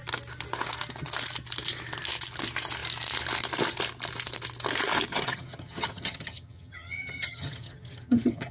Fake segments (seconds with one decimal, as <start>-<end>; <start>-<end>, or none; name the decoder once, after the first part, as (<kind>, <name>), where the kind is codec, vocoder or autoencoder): 5.1-8.5 (vocoder, HiFi-GAN)